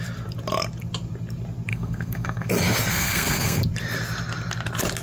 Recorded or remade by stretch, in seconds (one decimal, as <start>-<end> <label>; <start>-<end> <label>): 0.0-1.7 recorded; 1.7-2.5 remade; 2.5-2.9 recorded; 2.9-3.6 remade; 3.6-5.0 recorded